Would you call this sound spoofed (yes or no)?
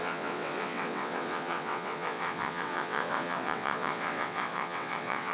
yes